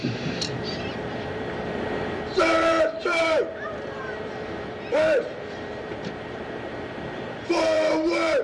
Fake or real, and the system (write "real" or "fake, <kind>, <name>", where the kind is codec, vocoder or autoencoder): fake, vocoder, BigVGAN v2